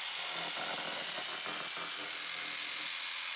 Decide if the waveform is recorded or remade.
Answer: recorded